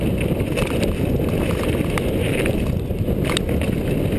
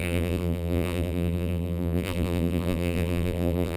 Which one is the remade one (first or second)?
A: second